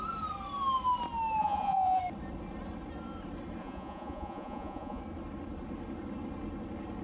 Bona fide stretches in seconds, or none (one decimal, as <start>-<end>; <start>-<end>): 0.0-1.4; 2.0-3.6; 5.0-7.0

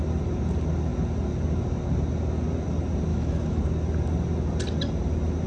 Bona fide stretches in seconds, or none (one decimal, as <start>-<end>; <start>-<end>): 0.0-3.1; 3.6-5.5